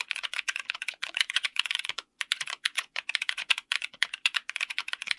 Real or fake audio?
fake